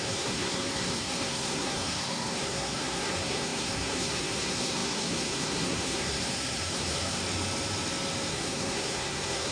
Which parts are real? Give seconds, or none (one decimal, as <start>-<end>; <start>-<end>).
7.2-8.3